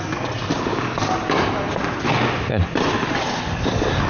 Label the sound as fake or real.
real